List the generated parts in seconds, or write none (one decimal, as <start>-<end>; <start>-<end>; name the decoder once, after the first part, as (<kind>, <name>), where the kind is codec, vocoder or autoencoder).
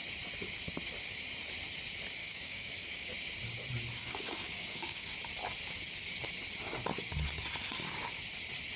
2.2-3.1 (codec, DAC); 4.0-5.1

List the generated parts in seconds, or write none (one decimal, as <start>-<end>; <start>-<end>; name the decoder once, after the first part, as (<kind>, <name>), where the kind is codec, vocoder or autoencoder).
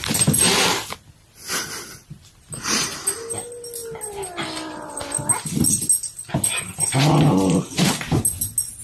none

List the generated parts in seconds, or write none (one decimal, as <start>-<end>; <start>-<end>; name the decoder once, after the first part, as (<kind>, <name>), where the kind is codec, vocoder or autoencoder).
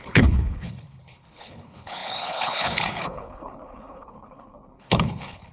0.0-5.5 (codec, HILCodec)